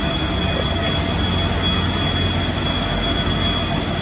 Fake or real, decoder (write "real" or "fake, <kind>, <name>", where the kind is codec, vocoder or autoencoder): real